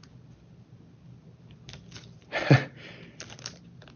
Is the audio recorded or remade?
recorded